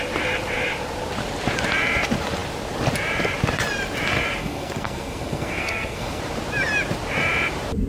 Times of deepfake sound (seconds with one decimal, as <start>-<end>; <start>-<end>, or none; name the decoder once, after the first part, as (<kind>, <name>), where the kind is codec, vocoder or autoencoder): 4.4-6.2 (codec, SNAC)